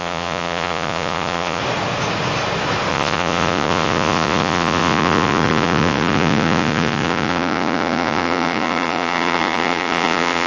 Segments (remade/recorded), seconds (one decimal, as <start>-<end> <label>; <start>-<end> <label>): 0.0-1.6 remade; 1.6-2.9 recorded; 2.9-10.5 remade